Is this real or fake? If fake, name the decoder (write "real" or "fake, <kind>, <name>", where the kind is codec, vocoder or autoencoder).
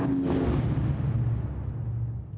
real